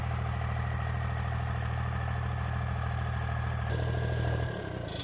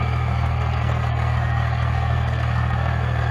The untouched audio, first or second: first